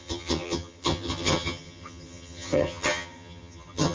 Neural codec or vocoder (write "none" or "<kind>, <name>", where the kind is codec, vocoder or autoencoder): vocoder, HiFi-GAN